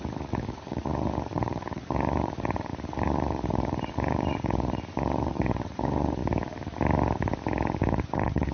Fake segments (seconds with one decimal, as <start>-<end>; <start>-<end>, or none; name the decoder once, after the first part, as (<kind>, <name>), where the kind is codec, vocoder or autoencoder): 0.0-6.2 (vocoder, Vocos); 7.8-8.5